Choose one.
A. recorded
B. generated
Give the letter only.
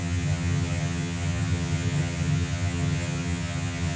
B